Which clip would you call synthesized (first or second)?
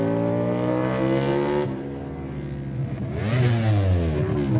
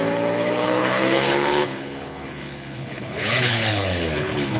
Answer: second